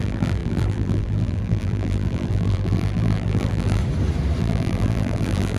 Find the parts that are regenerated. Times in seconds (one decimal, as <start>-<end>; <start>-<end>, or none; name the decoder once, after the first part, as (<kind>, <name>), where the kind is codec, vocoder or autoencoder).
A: 0.0-3.8 (vocoder, BigVGAN v2); 4.4-5.6